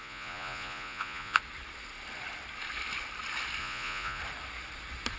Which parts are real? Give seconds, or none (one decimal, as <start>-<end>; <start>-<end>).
1.4-3.6; 4.2-5.2